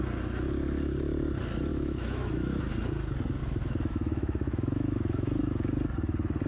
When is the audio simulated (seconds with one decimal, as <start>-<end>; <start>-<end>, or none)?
1.7-2.6; 3.4-5.4